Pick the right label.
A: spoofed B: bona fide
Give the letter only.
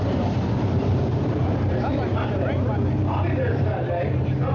A